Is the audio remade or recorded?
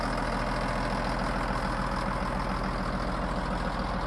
recorded